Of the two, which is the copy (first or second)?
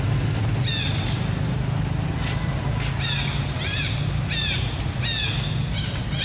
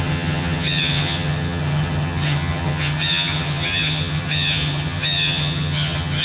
second